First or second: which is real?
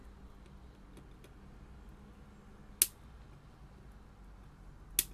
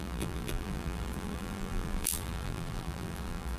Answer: first